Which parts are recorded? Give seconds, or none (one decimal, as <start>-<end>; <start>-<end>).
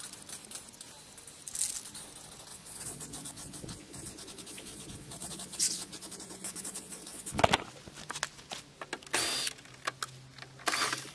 0.0-2.5; 7.4-11.1